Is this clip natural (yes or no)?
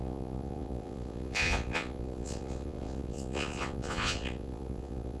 no